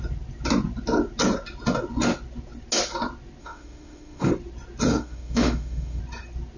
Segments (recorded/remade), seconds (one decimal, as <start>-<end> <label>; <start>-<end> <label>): 0.0-3.4 recorded; 3.4-4.3 remade; 4.3-4.9 recorded; 4.9-6.0 remade; 6.0-6.6 recorded